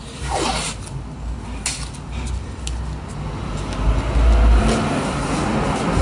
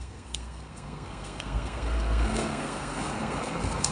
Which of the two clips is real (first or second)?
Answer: first